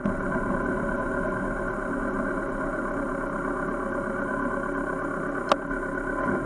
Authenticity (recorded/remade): recorded